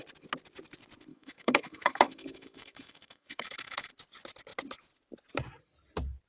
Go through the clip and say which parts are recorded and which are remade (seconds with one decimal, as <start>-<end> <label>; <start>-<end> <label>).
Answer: 0.0-1.1 recorded; 1.1-3.9 remade; 3.9-6.3 recorded